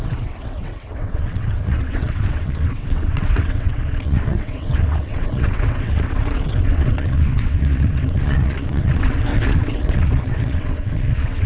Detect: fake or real fake